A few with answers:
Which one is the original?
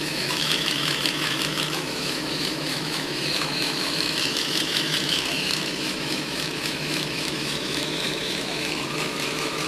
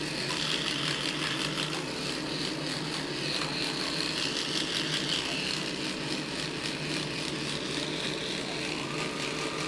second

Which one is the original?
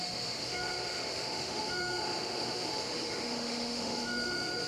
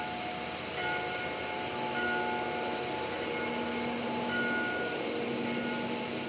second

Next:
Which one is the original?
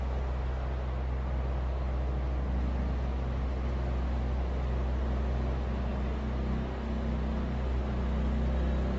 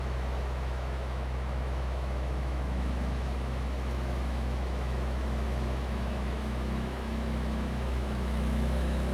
first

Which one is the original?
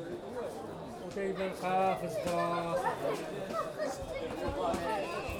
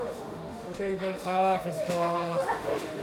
first